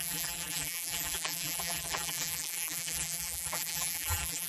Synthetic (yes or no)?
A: yes